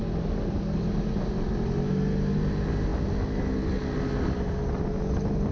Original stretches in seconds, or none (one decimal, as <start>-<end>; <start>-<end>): 0.0-5.5